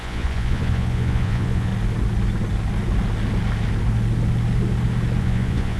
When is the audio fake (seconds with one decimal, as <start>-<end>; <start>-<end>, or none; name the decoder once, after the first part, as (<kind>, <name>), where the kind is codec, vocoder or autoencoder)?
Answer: 0.0-1.7 (vocoder, Vocos); 5.2-5.8